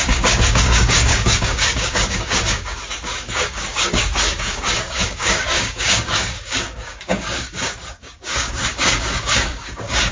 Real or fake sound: fake